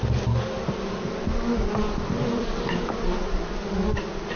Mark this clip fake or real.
real